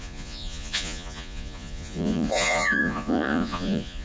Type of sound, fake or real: fake